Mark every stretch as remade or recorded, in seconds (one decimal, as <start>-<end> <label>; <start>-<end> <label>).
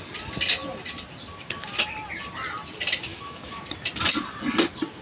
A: 0.0-3.1 recorded; 3.1-3.6 remade; 3.6-5.0 recorded